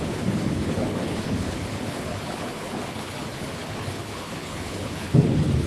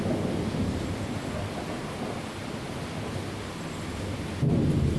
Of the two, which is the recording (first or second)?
second